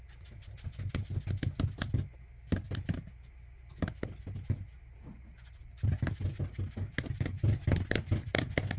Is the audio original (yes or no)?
yes